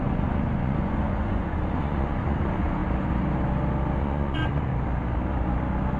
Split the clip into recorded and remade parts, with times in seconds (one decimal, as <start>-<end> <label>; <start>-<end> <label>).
0.0-2.8 remade; 2.8-4.0 recorded; 4.0-4.7 remade; 4.7-6.0 recorded